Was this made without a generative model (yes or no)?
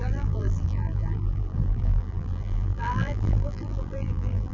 no